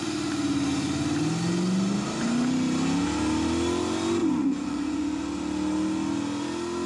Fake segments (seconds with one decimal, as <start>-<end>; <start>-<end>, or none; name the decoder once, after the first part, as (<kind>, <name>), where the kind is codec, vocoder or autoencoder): 4.2-5.2 (vocoder, Vocos)